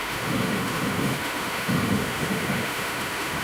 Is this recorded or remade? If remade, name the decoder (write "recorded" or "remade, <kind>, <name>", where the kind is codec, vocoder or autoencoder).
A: remade, autoencoder, DAC-VAE